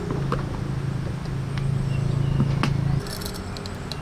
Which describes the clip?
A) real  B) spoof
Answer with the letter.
A